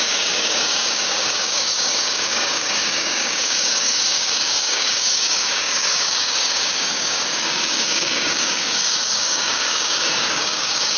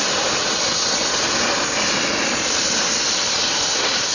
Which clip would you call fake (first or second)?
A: first